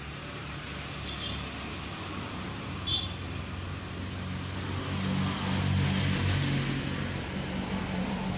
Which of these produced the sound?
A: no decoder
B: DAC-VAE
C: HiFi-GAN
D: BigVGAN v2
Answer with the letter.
A